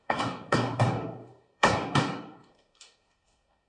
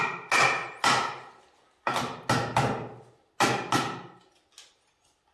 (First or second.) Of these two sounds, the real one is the second